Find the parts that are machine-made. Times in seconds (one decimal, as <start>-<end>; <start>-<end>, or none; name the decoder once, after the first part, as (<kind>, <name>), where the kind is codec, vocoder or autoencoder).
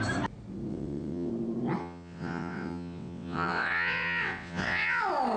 0.7-1.3 (vocoder, WaveNeXt); 1.8-5.0